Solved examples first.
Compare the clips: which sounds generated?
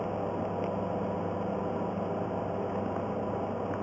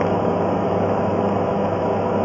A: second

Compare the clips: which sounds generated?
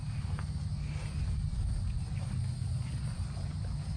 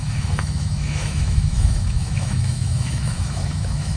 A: second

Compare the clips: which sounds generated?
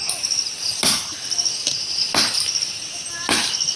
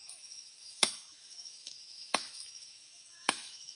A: second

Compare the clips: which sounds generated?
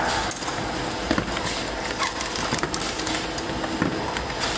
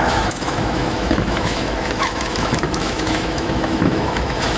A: second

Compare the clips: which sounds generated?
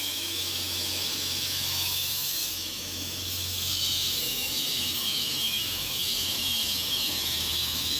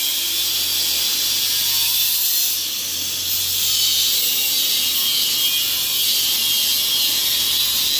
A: first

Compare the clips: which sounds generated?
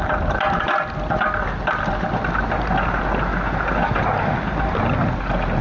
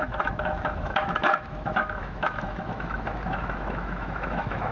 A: second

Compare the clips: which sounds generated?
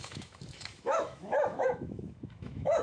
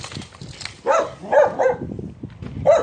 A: first